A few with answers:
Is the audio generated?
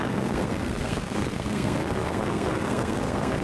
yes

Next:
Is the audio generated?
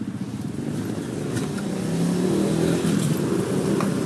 no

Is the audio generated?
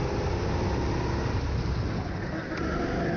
no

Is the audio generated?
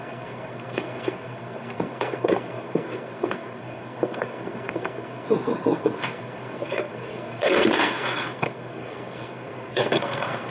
yes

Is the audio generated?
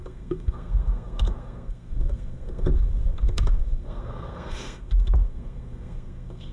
yes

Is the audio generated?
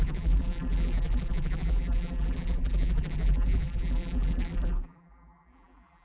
yes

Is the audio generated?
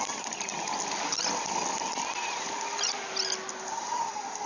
no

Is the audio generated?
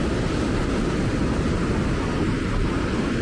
no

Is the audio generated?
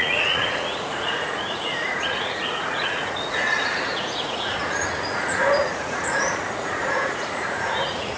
yes